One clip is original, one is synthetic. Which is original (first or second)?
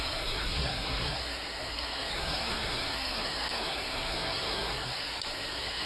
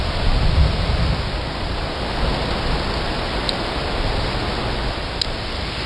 second